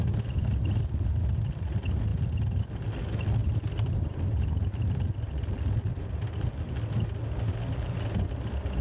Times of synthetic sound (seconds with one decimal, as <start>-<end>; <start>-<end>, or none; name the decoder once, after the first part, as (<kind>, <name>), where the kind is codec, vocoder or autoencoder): 2.1-2.7 (vocoder, BigVGAN v2); 3.4-6.6